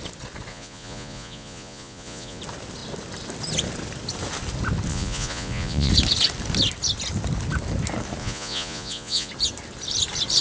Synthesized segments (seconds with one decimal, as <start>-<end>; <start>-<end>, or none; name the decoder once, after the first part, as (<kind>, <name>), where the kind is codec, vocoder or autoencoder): 0.5-2.4 (vocoder, Vocos); 4.9-5.9; 8.2-9.3